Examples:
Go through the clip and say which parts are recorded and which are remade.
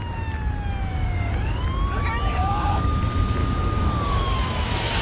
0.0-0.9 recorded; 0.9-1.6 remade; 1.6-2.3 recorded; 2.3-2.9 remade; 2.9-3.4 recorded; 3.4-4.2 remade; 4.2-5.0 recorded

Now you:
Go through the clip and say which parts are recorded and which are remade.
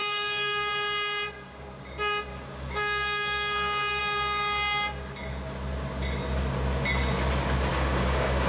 0.0-0.7 remade; 0.7-2.3 recorded; 2.3-4.0 remade; 4.0-7.7 recorded; 7.7-8.5 remade